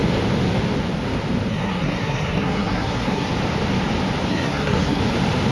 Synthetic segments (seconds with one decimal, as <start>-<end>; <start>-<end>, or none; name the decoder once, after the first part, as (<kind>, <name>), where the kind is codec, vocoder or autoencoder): 1.5-3.3 (codec, SNAC); 4.3-5.0